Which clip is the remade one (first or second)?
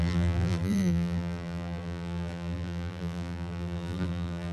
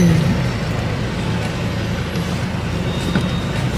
first